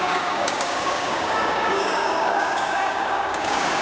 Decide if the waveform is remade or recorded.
remade